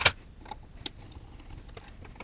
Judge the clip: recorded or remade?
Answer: recorded